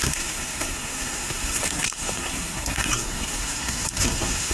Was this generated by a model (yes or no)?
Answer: yes